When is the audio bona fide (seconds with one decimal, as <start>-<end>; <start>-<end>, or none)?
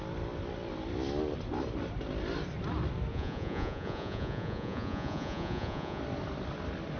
0.0-3.1; 6.0-7.0